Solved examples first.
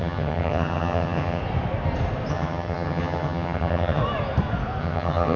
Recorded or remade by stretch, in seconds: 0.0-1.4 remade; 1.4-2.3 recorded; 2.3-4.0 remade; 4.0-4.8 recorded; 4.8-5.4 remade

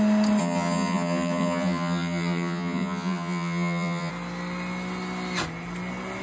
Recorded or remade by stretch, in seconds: 0.0-0.4 recorded; 0.4-4.1 remade; 4.1-6.2 recorded

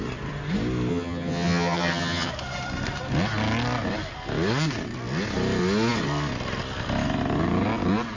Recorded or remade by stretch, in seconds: 0.0-0.9 recorded; 0.9-2.3 remade; 2.3-8.2 recorded